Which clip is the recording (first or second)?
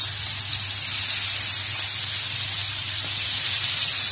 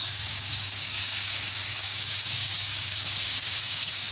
first